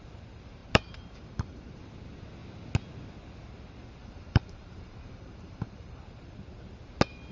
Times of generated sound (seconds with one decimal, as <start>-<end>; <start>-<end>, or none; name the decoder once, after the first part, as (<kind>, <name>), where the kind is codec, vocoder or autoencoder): 0.6-1.8 (vocoder, BigVGAN v2); 4.0-6.0